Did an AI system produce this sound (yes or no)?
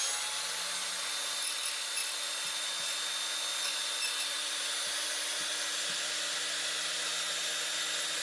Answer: no